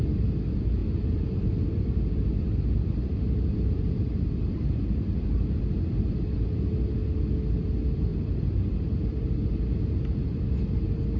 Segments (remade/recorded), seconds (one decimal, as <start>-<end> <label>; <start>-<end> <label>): 0.0-0.8 recorded; 0.8-1.9 remade; 1.9-3.0 recorded; 3.0-6.9 remade; 6.9-8.1 recorded; 8.1-9.8 remade; 9.8-11.2 recorded